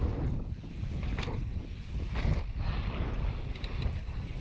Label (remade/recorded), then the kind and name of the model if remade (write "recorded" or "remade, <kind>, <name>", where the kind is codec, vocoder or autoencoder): recorded